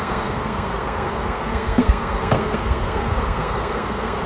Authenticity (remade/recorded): remade